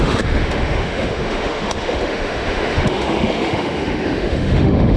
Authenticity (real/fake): fake